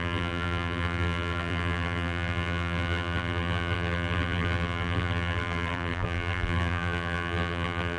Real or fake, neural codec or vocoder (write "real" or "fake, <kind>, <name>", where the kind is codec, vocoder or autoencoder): fake, vocoder, BigVGAN v2